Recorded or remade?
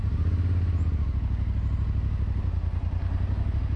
recorded